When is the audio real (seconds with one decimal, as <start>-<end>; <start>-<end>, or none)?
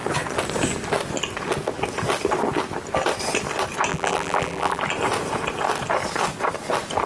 0.0-3.9; 4.8-7.1